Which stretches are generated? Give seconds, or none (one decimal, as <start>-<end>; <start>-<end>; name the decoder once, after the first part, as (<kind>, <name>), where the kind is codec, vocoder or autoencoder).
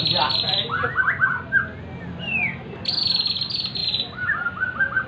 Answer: none